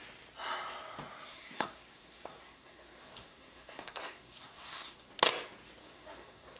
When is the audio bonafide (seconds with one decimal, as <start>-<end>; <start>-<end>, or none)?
0.0-1.3; 5.1-5.8